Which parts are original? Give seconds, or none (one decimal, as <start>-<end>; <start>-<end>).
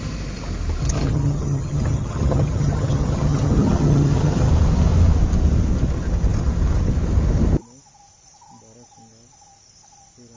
0.0-0.8; 4.5-10.4